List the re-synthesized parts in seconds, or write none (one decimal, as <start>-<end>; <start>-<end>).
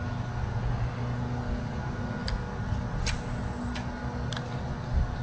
none